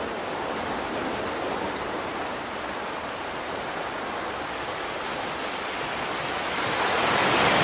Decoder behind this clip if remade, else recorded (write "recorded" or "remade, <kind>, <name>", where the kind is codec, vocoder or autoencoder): recorded